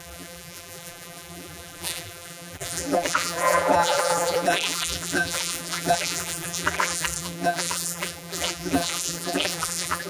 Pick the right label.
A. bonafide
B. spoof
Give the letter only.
B